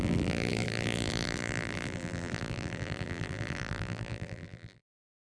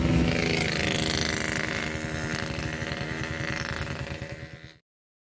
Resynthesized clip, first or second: first